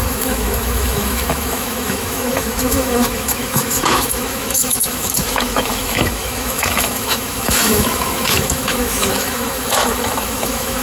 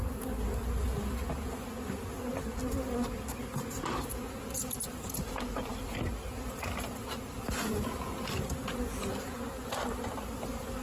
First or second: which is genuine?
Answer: second